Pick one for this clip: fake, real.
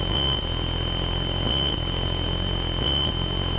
real